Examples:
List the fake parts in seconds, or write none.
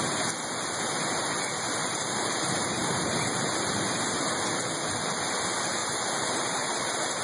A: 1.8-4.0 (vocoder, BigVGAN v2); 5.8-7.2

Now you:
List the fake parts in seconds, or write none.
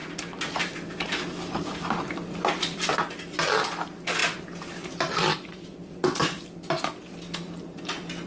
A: 0.0-2.9 (vocoder, BigVGAN v2); 4.2-6.4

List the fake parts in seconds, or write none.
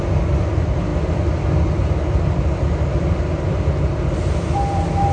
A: none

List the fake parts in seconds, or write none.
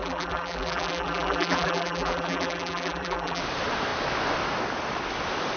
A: 0.0-3.4 (vocoder, BigVGAN v2)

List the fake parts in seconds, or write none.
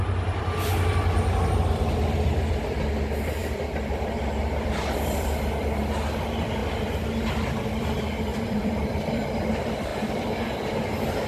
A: 0.0-6.6 (vocoder, BigVGAN v2); 7.8-11.3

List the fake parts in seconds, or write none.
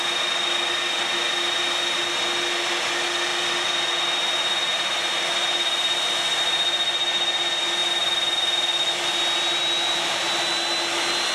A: none